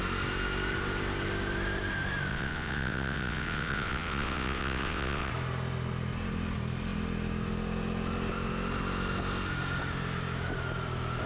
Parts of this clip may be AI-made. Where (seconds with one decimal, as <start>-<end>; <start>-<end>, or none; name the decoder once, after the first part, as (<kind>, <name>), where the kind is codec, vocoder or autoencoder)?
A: 2.3-5.3 (vocoder, WaveNeXt)